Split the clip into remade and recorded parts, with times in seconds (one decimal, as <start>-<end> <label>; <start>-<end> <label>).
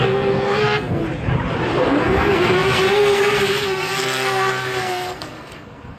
0.0-1.0 remade; 1.0-1.8 recorded; 1.8-6.0 remade